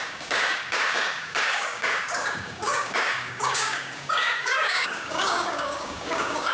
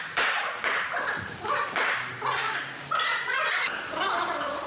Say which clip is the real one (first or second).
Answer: second